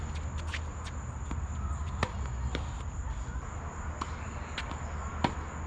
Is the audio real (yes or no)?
yes